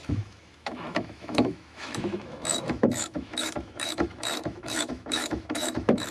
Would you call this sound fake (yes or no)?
yes